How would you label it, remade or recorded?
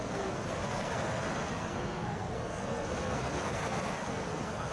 remade